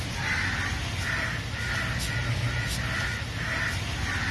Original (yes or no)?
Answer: yes